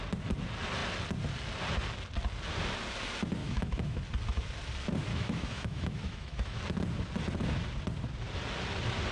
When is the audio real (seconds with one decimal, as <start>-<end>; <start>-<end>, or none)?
0.0-3.4; 4.0-5.1; 6.6-9.1